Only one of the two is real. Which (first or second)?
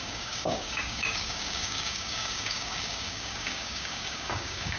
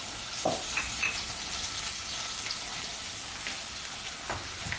second